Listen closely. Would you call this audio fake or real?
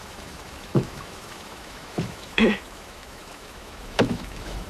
fake